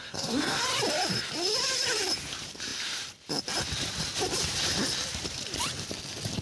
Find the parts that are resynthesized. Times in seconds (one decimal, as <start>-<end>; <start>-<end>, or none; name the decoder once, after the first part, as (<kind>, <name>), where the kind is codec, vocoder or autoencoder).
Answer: 0.0-0.6 (codec, SNAC)